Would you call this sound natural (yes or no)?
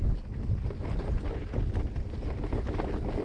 yes